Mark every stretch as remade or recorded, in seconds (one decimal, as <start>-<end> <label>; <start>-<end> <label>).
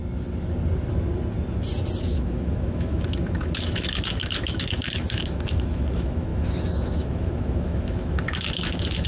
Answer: 0.0-2.0 recorded; 2.0-9.1 remade